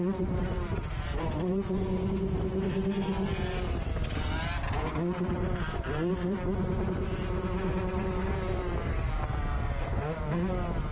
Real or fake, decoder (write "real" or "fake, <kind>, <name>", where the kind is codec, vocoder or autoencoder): fake, vocoder, BigVGAN v2